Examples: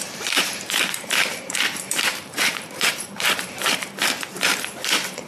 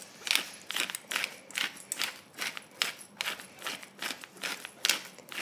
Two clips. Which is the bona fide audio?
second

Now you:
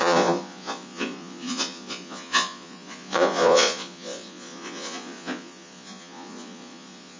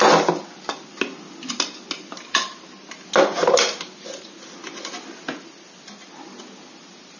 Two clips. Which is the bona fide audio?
second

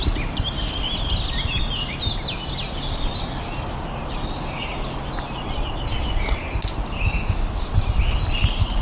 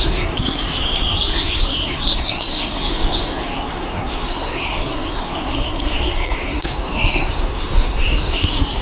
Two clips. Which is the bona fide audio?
first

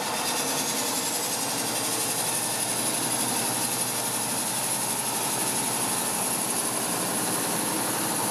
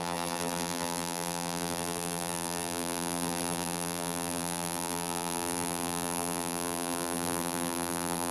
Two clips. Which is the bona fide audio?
first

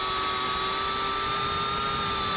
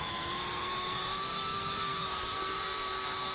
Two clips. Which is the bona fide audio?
first